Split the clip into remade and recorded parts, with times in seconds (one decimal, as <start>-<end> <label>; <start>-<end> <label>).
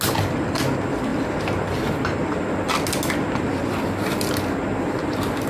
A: 0.0-5.5 recorded